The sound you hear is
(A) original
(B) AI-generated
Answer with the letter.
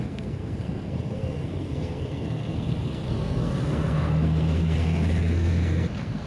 B